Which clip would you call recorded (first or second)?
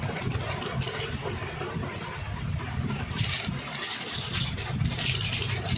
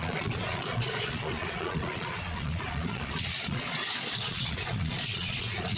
first